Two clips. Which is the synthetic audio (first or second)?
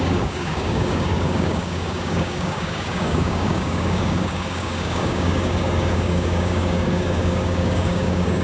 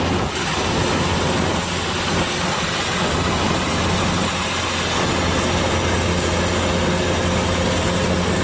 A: first